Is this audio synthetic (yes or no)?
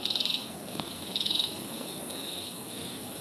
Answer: yes